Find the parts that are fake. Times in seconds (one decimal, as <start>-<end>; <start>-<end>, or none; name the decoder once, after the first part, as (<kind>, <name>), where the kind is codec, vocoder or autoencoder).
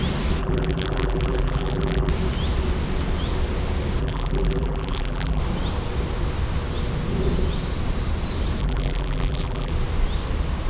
0.4-2.1 (vocoder, BigVGAN v2); 4.0-5.4; 8.6-9.7